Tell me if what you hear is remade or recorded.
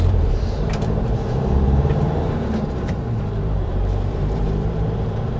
remade